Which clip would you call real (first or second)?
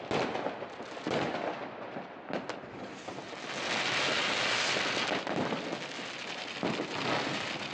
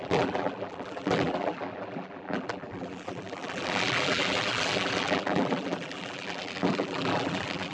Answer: first